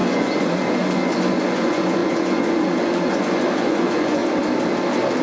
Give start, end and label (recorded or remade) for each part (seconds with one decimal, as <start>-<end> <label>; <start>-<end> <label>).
0.0-4.2 remade; 4.2-5.2 recorded